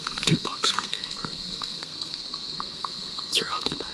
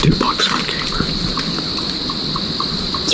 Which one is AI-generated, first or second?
first